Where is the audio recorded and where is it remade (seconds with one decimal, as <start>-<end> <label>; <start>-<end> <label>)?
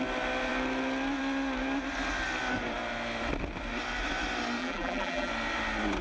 0.0-4.6 recorded; 4.6-5.3 remade; 5.3-6.0 recorded